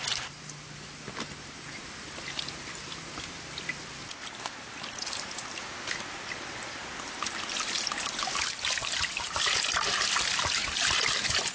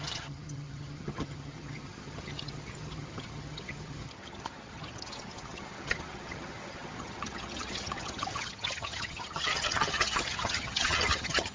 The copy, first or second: second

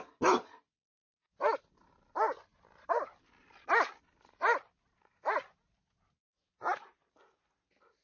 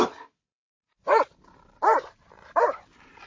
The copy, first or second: second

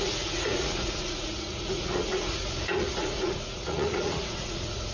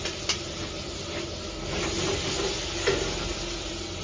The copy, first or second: first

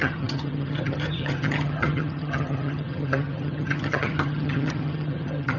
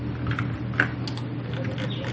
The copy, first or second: first